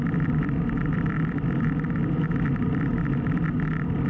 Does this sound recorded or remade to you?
recorded